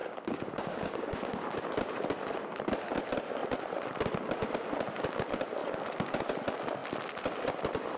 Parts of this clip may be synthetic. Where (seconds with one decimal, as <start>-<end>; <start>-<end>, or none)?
0.0-1.6